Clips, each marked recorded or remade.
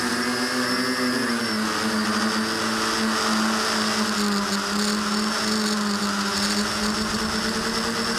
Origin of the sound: recorded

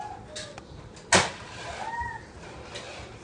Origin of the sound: recorded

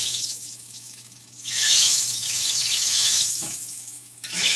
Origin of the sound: remade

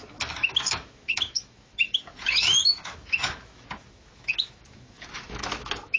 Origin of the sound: remade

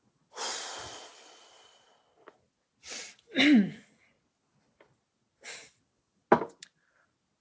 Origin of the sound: recorded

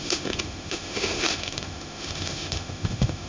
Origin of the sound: remade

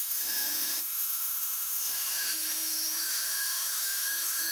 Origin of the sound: remade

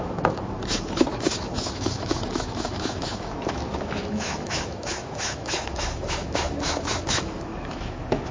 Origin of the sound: remade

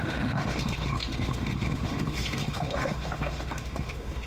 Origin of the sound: remade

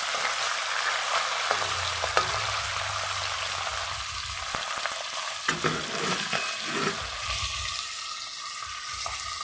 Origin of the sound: recorded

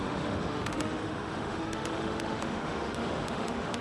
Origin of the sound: remade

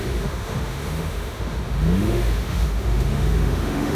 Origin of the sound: remade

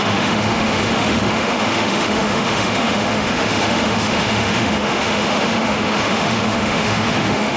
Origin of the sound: remade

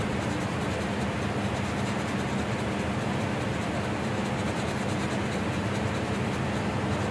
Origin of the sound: recorded